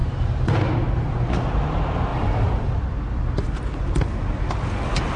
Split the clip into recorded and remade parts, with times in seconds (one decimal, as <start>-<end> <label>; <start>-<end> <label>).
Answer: 0.0-0.6 remade; 0.6-2.1 recorded; 2.1-2.8 remade; 2.8-5.2 recorded